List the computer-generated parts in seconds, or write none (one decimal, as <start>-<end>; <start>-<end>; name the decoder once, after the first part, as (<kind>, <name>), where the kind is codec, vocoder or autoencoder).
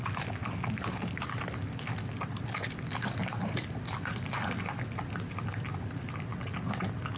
none